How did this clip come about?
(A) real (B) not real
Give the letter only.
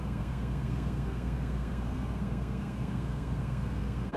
B